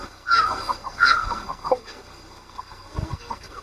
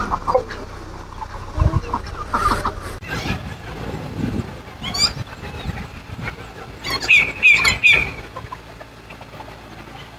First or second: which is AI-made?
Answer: first